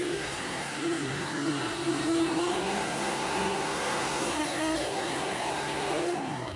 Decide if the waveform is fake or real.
fake